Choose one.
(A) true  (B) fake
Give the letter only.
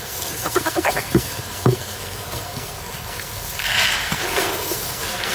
B